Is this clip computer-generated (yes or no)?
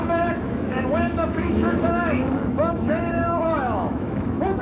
yes